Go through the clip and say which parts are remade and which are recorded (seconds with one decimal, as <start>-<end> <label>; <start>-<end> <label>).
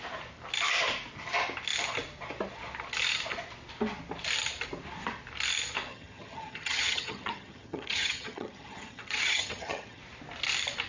0.0-5.9 recorded; 5.9-10.0 remade; 10.0-10.9 recorded